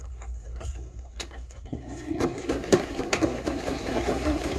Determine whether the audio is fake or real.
fake